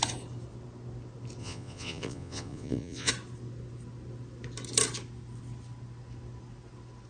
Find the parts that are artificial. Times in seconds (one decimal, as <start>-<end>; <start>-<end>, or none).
1.4-3.1